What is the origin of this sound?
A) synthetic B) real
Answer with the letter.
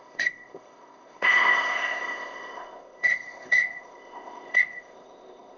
A